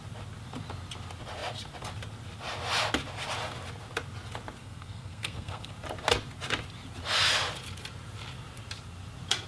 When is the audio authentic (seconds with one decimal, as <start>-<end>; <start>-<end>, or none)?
0.0-4.6; 5.7-9.5